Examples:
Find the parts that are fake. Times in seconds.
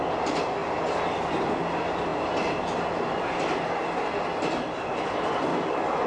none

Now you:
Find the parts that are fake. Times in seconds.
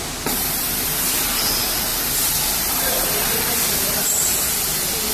none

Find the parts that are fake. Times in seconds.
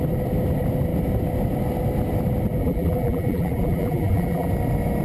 2.6-4.5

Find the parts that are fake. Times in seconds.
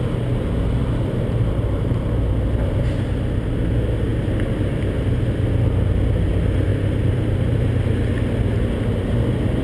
0.8-1.5; 6.7-8.2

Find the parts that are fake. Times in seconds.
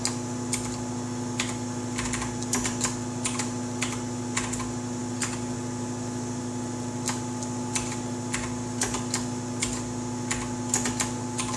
none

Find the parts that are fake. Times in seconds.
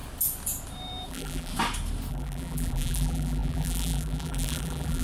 1.1-1.5; 2.1-5.0